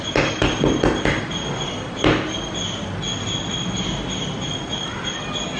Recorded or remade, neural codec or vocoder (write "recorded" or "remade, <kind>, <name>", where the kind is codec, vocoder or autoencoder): recorded